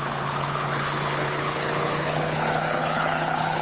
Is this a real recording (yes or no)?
no